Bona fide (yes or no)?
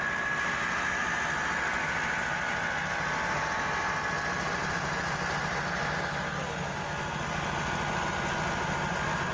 yes